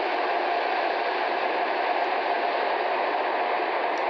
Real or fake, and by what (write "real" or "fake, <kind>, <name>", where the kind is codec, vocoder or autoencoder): real